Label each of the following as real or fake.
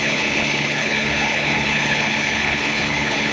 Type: fake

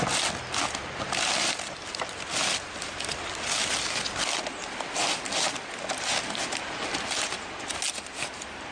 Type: real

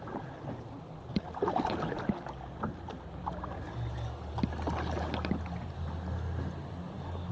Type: real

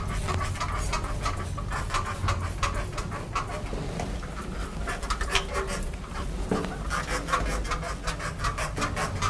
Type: real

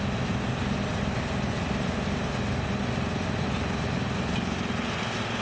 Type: real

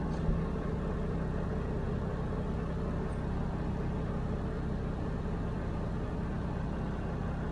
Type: real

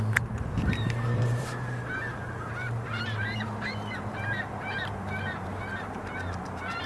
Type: fake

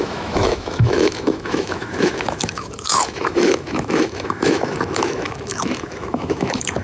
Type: fake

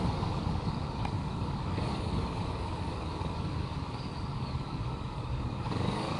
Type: fake